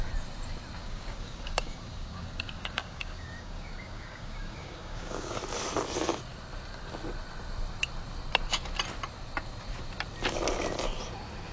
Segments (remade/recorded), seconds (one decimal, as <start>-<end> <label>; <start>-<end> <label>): 0.0-0.8 recorded; 0.8-5.4 remade; 5.4-11.5 recorded